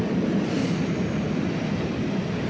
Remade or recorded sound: recorded